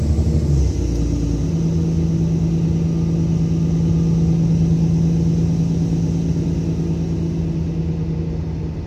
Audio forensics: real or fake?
real